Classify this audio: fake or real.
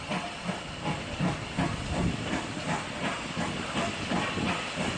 real